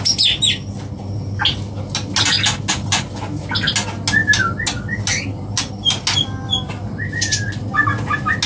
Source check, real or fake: real